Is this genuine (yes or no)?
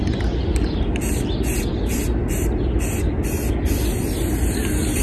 yes